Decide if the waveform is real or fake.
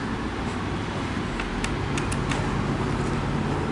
real